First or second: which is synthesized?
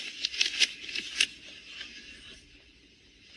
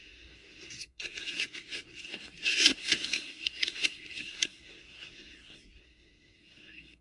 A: second